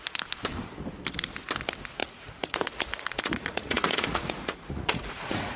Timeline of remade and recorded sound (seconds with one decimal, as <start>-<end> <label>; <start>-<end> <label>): 0.0-2.0 recorded; 2.0-5.6 remade